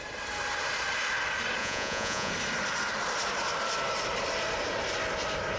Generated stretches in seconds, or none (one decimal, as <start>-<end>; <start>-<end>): 1.6-2.3